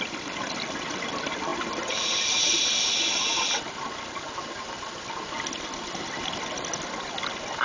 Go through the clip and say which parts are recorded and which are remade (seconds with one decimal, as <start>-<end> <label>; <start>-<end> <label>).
0.0-7.6 recorded